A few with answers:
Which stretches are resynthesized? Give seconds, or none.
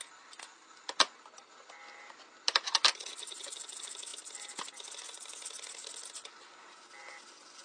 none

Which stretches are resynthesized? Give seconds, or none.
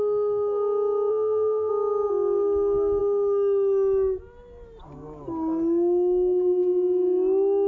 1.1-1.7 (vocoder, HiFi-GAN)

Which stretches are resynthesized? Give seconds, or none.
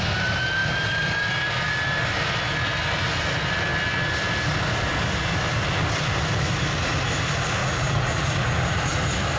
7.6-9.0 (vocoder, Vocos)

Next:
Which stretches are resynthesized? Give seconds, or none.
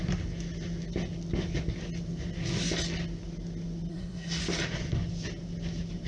3.9-4.4 (codec, SNAC)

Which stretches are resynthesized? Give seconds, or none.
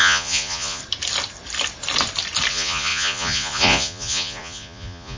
0.0-0.8 (vocoder, Vocos); 2.5-5.2